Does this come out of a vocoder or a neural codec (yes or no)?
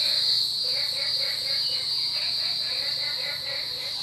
no